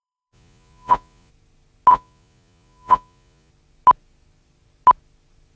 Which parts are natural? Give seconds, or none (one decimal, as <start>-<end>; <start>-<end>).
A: 1.3-1.9; 3.5-5.6